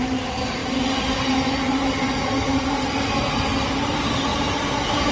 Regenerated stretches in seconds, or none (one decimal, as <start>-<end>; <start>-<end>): 4.3-5.1

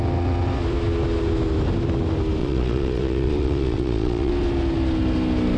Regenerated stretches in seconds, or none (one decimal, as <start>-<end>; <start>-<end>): 2.4-4.3

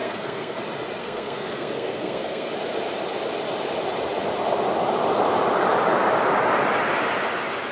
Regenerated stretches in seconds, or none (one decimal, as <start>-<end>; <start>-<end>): 0.0-0.6; 1.0-2.5

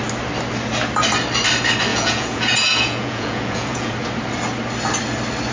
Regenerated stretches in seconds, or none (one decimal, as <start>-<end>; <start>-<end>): 1.9-3.9

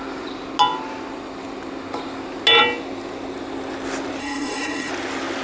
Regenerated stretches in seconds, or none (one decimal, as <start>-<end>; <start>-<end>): 4.2-4.9

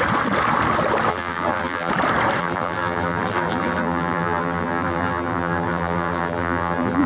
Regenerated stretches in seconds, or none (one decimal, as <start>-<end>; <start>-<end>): 1.1-1.9; 2.4-7.1